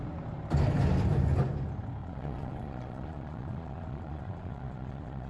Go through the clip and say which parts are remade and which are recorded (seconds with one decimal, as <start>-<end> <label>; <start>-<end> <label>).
0.0-2.0 recorded; 2.0-5.3 remade